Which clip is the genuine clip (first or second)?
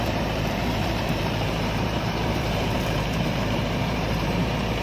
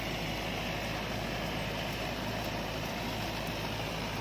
second